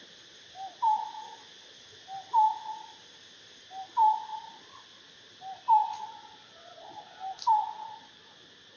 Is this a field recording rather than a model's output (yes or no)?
yes